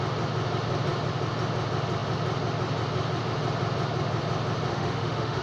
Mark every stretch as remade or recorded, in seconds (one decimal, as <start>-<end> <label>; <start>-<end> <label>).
0.0-4.7 recorded; 4.7-5.4 remade